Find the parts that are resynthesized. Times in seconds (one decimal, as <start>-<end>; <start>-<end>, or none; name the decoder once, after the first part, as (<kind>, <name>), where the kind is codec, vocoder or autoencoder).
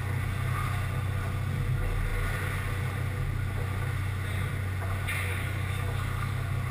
5.3-6.3 (codec, DAC)